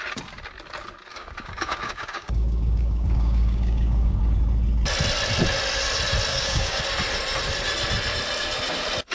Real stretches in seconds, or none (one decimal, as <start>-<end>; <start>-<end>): 0.0-1.1; 4.2-6.3; 6.8-9.1